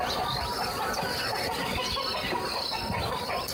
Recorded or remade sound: recorded